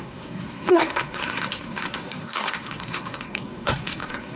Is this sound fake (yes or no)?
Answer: yes